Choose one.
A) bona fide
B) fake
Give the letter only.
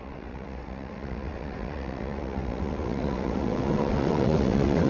B